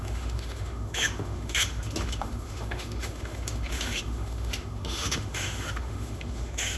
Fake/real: fake